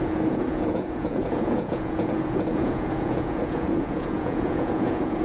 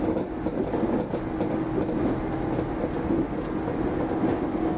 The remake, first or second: first